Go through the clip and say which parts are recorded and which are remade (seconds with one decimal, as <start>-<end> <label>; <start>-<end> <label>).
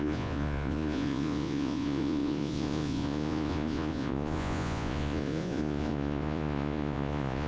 0.0-7.5 remade